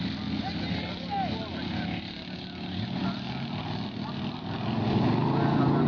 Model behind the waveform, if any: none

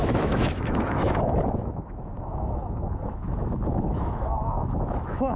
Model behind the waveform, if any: autoencoder, DAC-VAE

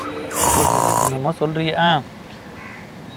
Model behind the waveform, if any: vocoder, BigVGAN v2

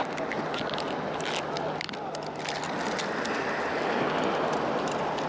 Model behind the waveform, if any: none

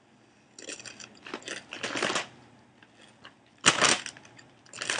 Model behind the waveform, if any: none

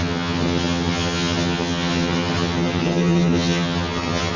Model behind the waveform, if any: vocoder, HiFi-GAN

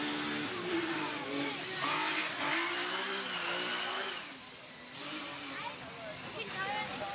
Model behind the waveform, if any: none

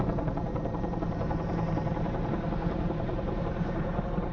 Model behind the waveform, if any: vocoder, BigVGAN v2